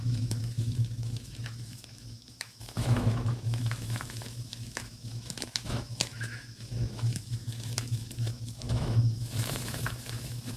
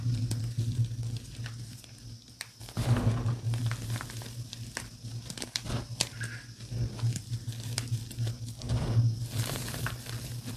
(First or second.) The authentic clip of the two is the second